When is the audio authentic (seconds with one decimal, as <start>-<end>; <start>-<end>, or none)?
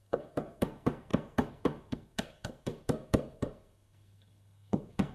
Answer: none